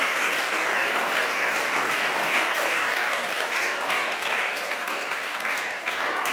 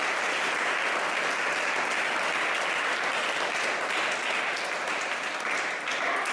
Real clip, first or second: second